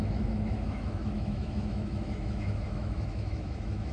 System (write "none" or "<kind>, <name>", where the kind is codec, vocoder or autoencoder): autoencoder, DAC-VAE